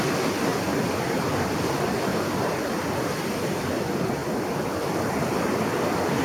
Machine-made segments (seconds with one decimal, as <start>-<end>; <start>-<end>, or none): 4.2-4.7

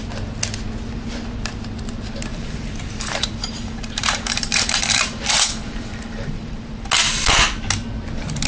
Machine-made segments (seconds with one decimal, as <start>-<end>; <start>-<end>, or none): 2.3-6.9

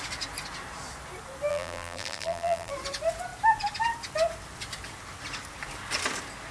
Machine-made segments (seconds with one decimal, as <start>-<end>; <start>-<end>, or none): 1.5-2.7

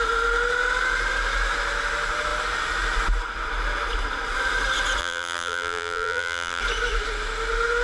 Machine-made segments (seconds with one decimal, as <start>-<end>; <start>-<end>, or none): 5.0-6.6